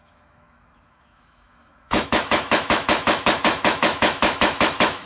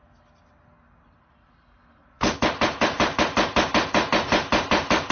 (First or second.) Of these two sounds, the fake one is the first